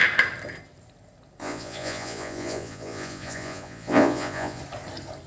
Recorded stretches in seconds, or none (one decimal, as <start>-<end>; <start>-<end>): 0.0-1.4; 4.6-5.3